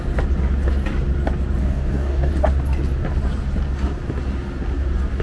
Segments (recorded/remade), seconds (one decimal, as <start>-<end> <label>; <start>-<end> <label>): 0.0-1.6 recorded; 1.6-2.3 remade; 2.3-5.2 recorded